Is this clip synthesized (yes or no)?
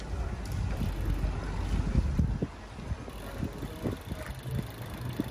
no